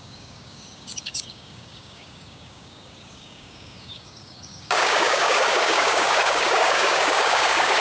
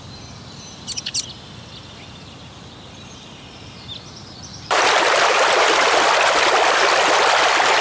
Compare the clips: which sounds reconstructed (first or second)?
first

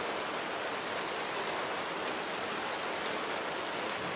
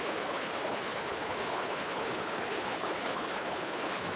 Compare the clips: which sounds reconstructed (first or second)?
second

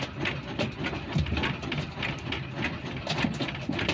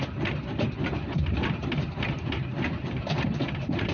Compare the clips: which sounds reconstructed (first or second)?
second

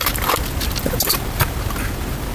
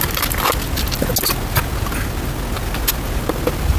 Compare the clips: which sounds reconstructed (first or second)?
first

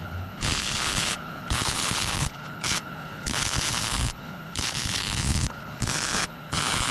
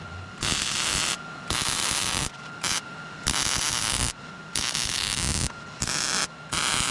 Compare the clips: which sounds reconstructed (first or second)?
first